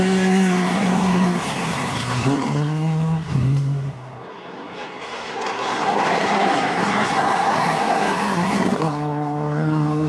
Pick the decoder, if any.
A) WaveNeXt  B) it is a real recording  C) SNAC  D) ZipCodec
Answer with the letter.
C